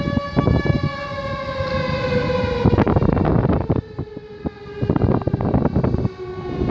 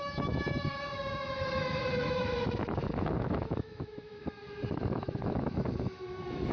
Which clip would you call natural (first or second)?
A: first